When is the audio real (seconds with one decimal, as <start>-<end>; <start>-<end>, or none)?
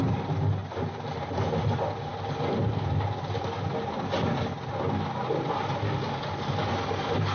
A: 0.0-7.3